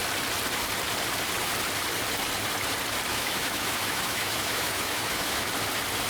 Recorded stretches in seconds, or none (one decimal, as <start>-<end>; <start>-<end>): 0.0-3.1; 5.5-6.1